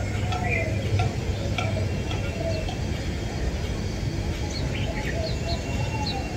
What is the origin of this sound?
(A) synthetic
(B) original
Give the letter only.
B